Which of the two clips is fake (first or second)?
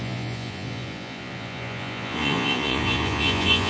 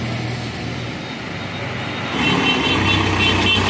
first